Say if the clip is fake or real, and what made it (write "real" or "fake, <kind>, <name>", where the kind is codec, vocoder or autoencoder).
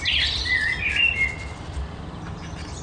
real